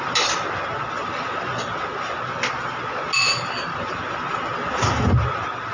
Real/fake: real